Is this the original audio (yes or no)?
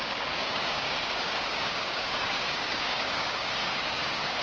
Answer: no